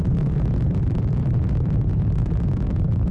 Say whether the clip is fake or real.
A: fake